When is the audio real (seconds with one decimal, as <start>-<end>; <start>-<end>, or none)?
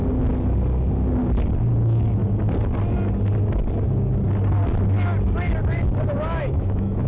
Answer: 0.0-1.7; 2.2-6.4